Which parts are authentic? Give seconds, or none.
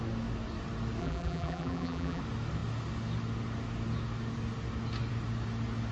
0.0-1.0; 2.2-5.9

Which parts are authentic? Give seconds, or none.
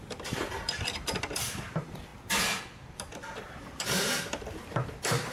2.1-2.6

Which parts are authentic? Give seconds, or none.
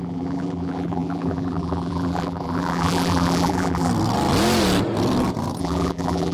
3.9-5.6